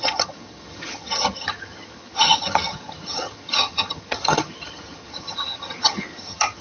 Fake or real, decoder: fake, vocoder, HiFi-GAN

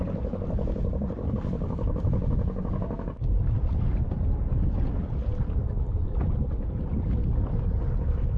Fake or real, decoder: real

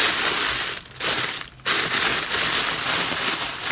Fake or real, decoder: real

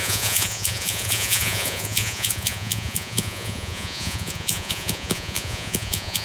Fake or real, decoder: fake, vocoder, Vocos